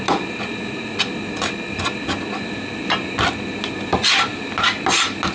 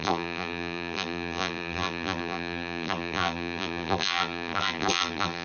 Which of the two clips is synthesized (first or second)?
second